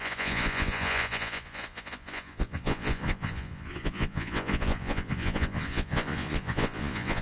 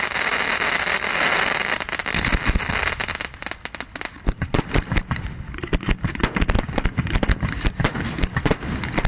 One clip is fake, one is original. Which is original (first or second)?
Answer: second